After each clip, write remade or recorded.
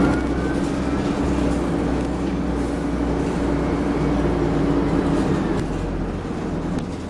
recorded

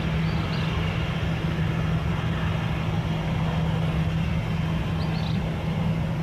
recorded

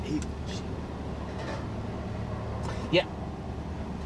recorded